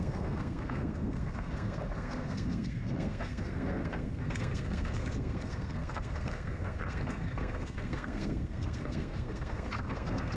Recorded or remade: remade